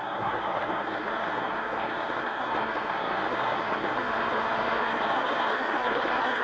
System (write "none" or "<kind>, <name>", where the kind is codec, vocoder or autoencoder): codec, SNAC